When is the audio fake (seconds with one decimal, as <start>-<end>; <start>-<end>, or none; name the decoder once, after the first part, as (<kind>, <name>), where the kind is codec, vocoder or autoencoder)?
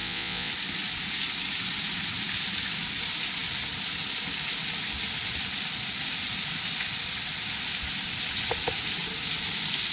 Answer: 0.0-0.5 (vocoder, Vocos)